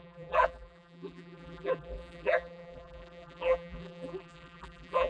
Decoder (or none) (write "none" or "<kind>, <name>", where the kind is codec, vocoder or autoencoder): vocoder, BigVGAN v2